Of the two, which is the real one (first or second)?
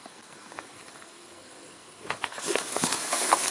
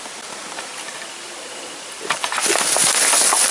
second